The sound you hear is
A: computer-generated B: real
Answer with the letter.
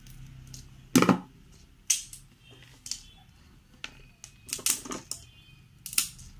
B